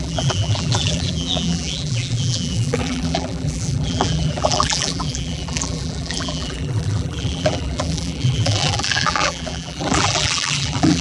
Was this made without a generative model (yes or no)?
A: no